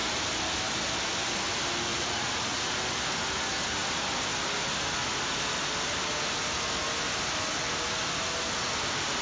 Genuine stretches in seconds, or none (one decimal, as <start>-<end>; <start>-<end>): 0.0-1.9; 2.7-9.2